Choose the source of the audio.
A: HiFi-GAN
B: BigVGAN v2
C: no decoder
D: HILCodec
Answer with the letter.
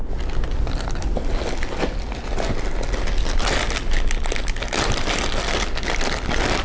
C